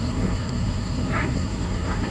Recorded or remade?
remade